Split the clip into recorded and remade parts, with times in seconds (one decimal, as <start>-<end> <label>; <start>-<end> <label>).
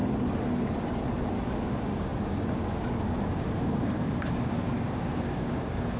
0.0-1.7 recorded; 1.7-6.0 remade